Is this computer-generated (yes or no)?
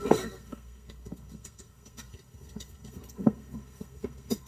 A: yes